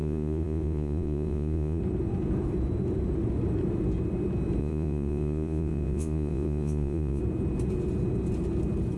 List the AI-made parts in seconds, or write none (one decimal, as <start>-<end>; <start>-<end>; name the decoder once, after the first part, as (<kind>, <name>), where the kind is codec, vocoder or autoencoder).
0.0-1.8 (vocoder, Vocos); 4.6-7.2

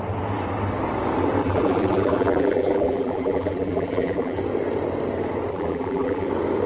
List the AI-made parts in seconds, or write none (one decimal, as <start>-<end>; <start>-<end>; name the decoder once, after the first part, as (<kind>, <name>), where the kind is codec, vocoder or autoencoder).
1.4-4.4 (vocoder, BigVGAN v2); 5.5-6.3

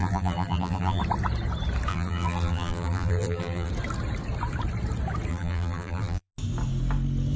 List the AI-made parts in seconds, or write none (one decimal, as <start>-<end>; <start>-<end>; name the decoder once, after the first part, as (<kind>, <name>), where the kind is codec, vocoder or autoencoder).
0.0-1.0 (vocoder, BigVGAN v2); 1.9-3.7; 5.3-6.3

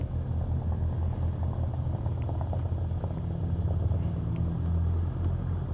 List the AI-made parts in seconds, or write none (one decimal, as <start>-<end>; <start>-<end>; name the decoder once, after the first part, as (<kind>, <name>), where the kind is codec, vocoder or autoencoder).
none

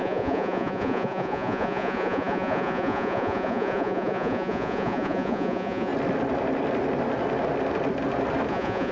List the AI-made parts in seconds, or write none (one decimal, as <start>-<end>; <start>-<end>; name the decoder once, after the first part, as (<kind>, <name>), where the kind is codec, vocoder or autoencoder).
0.0-5.9 (vocoder, Vocos); 8.5-8.9

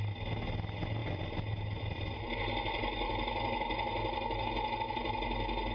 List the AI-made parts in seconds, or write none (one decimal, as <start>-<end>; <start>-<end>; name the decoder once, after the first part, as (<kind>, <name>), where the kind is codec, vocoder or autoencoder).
none

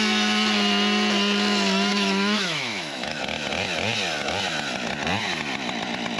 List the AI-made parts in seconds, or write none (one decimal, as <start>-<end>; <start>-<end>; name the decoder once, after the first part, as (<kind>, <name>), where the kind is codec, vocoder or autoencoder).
1.9-3.2 (autoencoder, DAC-VAE)